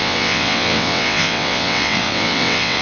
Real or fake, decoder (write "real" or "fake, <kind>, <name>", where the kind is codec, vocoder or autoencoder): fake, vocoder, WaveNeXt